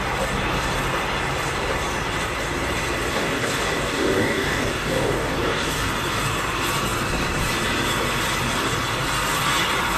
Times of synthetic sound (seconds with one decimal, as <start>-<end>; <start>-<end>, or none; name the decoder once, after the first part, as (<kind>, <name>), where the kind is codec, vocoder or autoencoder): 3.1-5.9 (codec, DAC)